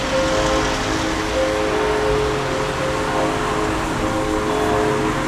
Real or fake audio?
real